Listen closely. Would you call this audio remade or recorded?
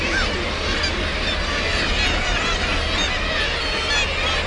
recorded